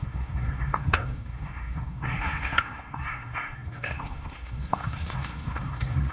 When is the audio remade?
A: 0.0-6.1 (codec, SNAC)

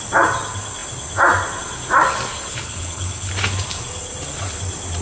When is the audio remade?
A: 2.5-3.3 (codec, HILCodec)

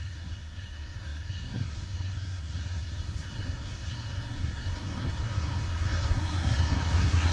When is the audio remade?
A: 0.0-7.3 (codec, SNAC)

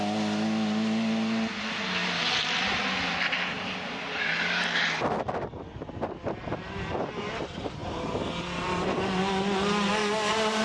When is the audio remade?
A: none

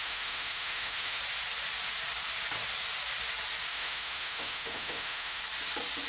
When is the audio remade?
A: 0.0-1.2 (autoencoder, DAC-VAE); 3.7-5.4

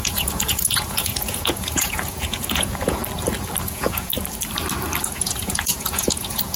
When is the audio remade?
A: 0.0-3.0 (vocoder, Vocos); 3.6-4.1; 5.0-6.6